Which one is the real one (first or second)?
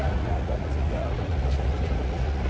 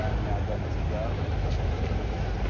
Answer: second